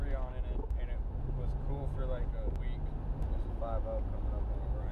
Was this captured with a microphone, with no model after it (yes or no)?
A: yes